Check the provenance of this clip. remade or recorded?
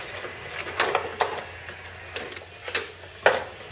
recorded